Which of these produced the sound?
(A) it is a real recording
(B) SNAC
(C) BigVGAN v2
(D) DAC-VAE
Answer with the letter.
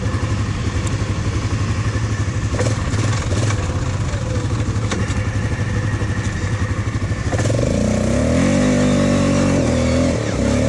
A